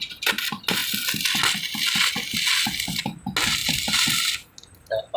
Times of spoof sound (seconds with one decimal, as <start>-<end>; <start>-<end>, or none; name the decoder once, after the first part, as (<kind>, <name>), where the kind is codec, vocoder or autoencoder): none